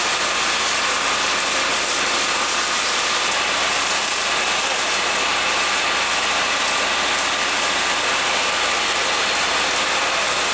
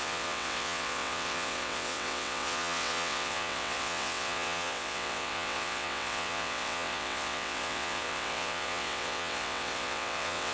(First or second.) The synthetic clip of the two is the second